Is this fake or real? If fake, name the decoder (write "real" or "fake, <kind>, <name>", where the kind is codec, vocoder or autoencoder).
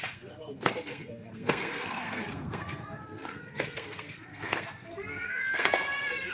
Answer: fake, codec, SNAC